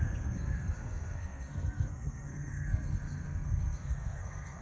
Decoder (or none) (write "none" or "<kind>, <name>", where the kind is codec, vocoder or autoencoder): codec, SNAC